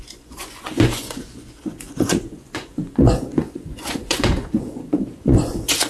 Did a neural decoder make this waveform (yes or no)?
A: yes